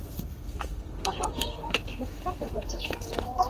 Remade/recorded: remade